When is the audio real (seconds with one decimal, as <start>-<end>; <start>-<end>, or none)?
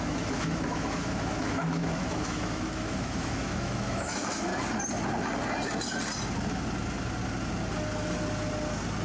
4.5-9.0